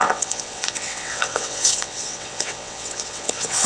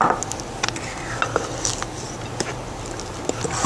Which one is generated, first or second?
first